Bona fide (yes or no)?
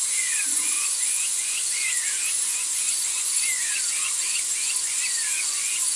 no